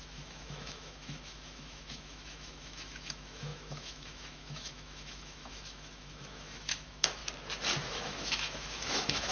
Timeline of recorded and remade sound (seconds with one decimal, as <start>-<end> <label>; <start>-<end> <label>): 0.0-7.2 remade; 7.2-7.9 recorded; 7.9-9.3 remade